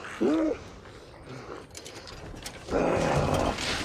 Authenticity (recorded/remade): recorded